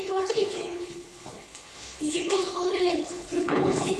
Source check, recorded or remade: remade